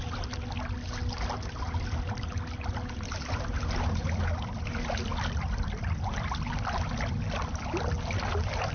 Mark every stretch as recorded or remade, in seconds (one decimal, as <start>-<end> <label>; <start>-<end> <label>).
0.0-8.7 recorded